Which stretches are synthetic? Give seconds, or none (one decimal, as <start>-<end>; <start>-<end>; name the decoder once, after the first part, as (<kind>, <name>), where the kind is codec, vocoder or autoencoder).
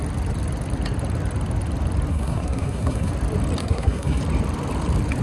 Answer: 2.1-3.1 (codec, SNAC); 3.6-4.2